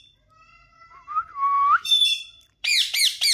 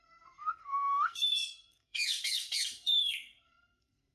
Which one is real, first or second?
first